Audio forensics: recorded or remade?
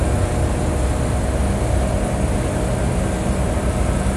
recorded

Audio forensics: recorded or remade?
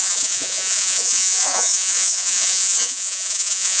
remade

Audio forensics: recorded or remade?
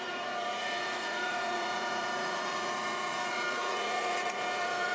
remade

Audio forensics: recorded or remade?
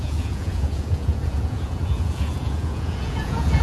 remade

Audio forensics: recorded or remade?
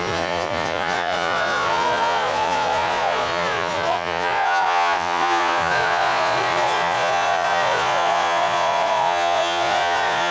remade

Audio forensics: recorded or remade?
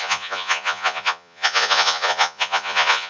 remade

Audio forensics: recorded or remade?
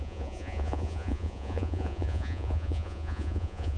remade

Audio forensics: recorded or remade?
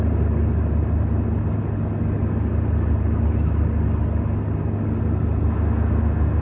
recorded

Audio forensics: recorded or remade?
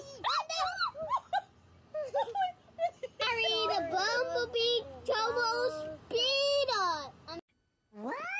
recorded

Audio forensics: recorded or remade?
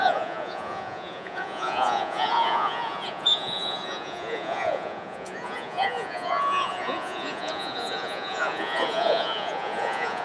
remade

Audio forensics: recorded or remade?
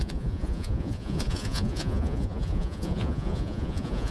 remade